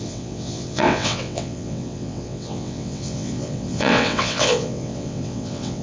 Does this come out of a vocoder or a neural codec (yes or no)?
yes